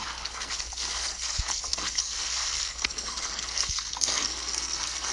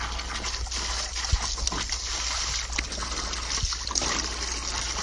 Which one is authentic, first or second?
second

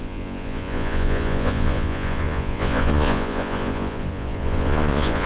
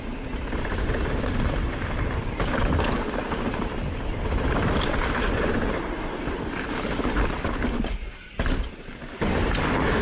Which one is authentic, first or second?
second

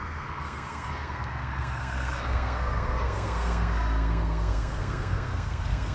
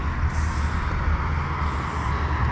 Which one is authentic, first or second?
second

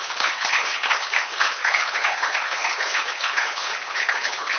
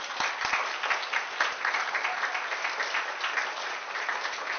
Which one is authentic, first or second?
second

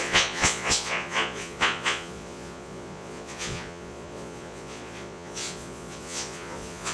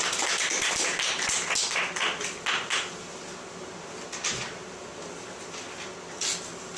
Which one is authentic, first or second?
second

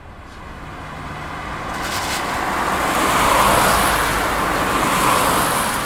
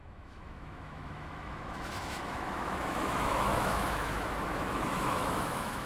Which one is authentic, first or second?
first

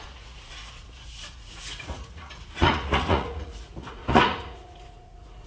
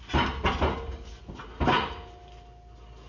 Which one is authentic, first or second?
second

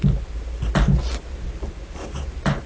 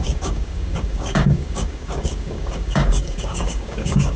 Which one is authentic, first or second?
first